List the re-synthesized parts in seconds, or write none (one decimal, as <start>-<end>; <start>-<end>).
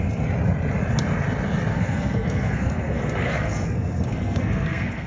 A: 1.7-5.1